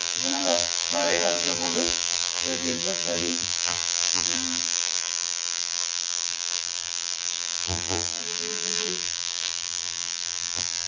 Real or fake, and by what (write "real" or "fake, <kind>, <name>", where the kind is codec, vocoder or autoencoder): fake, vocoder, BigVGAN v2